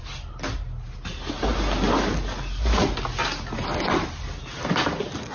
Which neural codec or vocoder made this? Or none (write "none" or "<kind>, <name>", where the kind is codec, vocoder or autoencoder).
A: none